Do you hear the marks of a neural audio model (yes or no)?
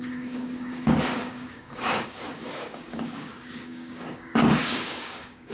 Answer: yes